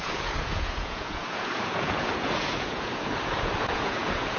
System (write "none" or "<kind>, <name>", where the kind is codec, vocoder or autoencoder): vocoder, Vocos